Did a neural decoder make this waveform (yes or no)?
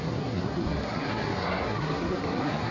yes